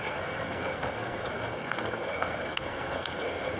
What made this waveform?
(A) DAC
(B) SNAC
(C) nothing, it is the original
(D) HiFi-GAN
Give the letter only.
B